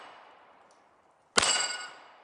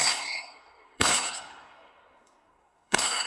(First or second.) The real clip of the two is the first